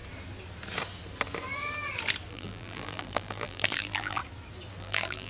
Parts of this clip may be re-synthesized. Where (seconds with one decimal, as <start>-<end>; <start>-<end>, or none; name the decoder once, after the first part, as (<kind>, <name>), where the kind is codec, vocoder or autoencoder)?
2.3-4.2 (vocoder, BigVGAN v2); 4.8-5.3